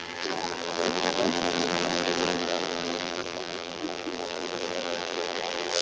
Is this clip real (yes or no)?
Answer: no